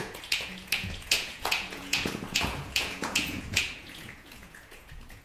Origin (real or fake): fake